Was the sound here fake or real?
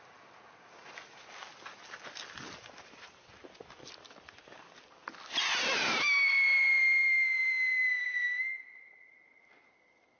real